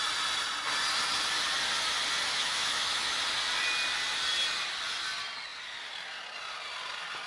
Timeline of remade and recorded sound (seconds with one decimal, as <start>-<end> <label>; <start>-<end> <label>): 0.0-2.3 recorded; 2.3-3.2 remade; 3.2-7.3 recorded